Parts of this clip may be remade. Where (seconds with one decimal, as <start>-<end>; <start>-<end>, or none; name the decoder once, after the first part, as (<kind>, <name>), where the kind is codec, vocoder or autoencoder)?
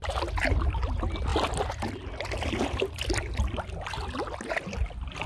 none